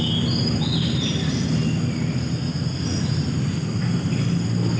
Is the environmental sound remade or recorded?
recorded